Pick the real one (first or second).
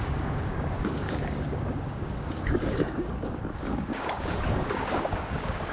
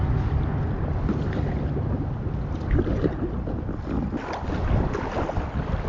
second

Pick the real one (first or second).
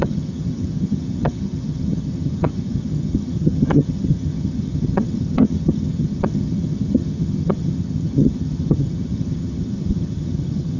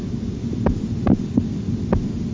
second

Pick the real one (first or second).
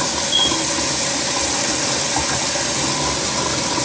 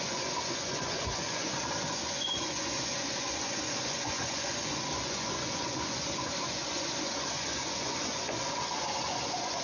first